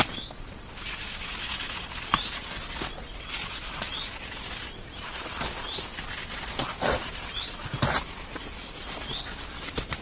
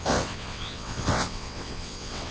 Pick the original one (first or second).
first